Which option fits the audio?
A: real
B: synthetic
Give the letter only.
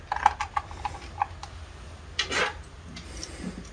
A